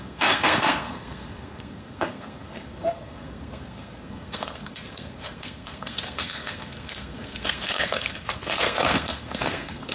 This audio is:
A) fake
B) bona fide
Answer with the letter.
A